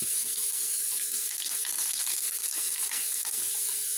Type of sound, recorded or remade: remade